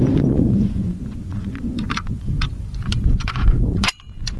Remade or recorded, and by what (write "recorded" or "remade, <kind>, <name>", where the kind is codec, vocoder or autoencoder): remade, vocoder, Vocos